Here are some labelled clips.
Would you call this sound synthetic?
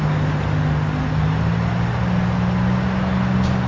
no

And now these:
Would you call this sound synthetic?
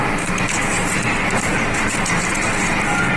no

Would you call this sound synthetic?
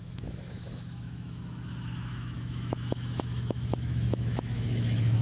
yes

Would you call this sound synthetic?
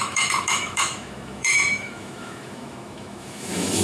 yes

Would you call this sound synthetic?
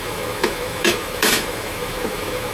yes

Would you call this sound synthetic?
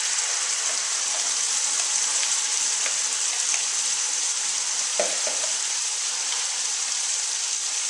yes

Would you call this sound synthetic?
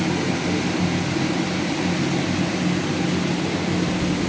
no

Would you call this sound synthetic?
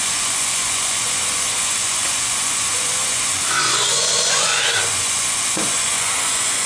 yes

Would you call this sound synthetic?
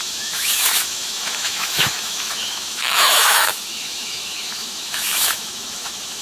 yes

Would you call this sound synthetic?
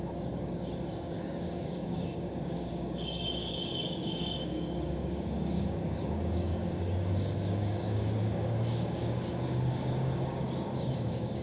yes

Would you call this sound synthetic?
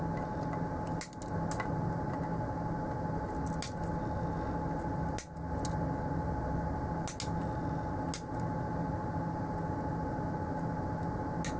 no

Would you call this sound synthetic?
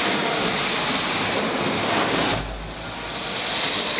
no